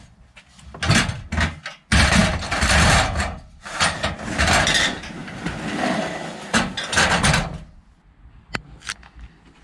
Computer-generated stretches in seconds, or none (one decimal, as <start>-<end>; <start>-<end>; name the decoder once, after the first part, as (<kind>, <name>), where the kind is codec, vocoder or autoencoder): none